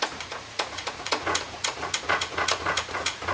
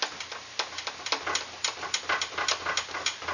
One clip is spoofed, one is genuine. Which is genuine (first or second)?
second